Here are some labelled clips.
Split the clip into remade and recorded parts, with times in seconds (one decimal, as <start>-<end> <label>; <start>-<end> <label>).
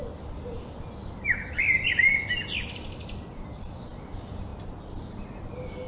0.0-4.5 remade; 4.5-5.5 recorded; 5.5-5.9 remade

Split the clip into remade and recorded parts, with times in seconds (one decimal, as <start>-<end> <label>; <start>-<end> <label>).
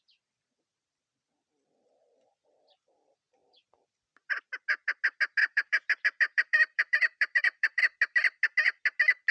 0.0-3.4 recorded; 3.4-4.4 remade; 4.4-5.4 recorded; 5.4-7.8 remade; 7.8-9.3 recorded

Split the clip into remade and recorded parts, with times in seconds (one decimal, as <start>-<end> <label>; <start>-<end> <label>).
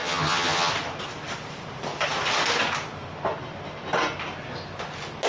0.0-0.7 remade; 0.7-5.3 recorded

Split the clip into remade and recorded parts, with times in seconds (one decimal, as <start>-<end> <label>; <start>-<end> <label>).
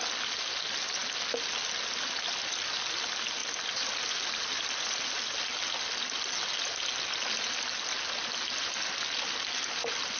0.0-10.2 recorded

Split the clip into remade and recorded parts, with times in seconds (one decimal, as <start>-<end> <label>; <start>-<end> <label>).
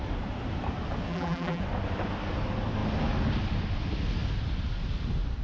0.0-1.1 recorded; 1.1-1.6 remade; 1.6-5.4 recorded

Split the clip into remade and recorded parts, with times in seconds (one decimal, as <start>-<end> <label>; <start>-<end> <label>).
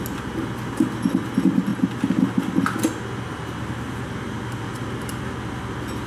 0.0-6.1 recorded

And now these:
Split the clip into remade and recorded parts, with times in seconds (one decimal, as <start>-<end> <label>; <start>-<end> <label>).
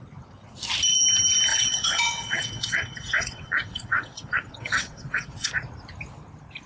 0.0-1.5 recorded; 1.5-5.5 remade; 5.5-6.7 recorded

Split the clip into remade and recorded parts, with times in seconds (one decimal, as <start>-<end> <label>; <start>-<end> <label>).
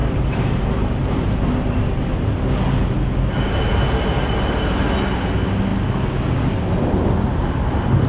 0.0-1.3 remade; 1.3-8.1 recorded